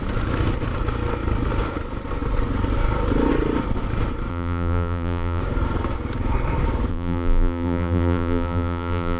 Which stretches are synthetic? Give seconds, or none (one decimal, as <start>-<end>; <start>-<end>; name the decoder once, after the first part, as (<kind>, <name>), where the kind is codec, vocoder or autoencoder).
4.3-5.4 (vocoder, BigVGAN v2); 6.9-9.2